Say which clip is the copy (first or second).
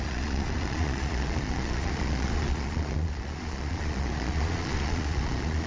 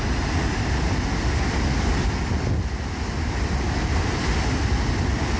first